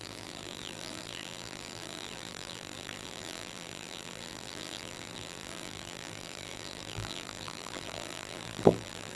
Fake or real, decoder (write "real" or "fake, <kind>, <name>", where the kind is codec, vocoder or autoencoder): fake, vocoder, BigVGAN v2